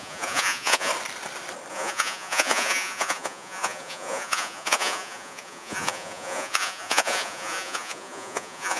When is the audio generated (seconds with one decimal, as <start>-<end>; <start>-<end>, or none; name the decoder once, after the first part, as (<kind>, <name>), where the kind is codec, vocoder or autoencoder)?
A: 0.0-0.9 (vocoder, Vocos); 1.7-8.8